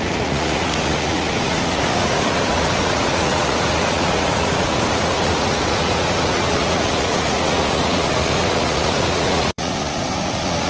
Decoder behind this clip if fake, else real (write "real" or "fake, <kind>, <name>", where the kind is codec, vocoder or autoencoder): fake, vocoder, Vocos